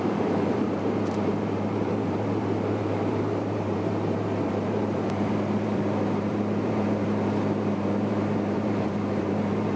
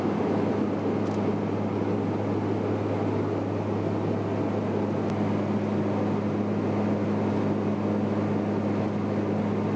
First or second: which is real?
second